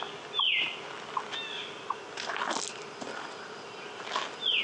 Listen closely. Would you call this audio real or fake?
real